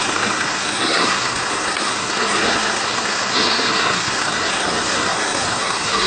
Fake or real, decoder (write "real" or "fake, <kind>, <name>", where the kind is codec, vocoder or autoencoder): fake, codec, SNAC